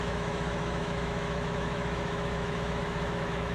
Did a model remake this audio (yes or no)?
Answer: yes